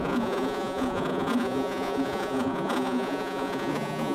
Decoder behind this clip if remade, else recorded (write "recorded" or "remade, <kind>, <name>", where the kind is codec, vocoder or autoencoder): remade, vocoder, Vocos